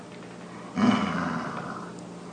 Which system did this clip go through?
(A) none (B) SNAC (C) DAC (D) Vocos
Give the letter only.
A